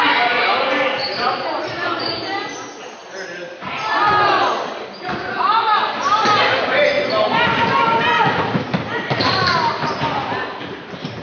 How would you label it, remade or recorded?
recorded